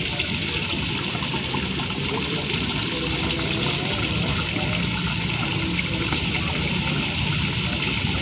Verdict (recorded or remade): recorded